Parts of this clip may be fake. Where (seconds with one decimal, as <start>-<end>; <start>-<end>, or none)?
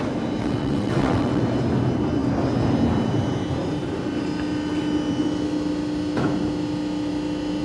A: 0.4-1.4